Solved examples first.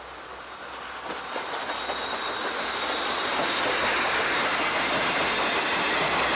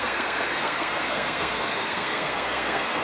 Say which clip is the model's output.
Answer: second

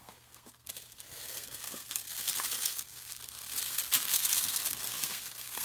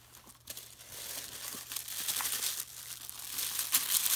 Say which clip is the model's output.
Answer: first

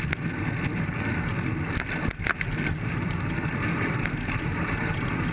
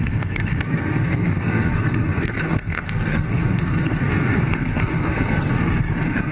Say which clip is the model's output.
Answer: second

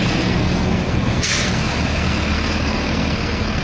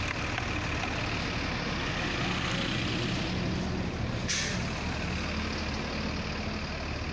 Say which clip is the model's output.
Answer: first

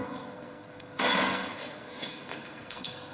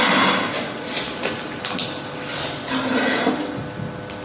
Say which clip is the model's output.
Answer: first